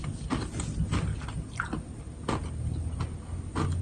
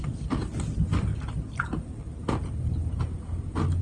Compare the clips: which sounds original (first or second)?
first